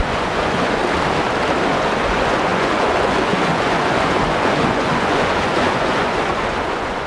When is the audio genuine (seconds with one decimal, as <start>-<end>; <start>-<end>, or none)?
0.8-1.7